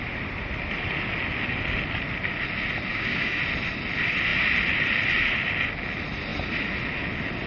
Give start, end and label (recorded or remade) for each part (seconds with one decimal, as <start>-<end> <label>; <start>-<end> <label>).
0.0-2.9 recorded; 2.9-3.4 remade; 3.4-7.5 recorded